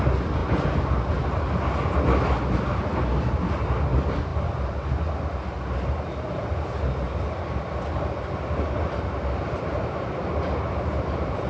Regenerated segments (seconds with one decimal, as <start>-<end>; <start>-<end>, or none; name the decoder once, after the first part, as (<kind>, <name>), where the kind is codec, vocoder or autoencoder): none